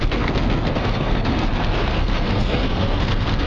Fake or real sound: fake